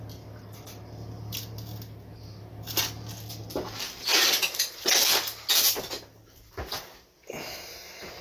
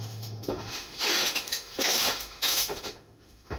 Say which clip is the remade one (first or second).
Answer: second